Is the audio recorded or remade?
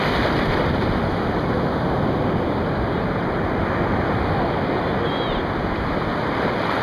recorded